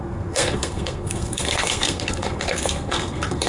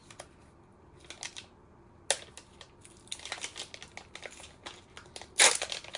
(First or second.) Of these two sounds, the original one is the second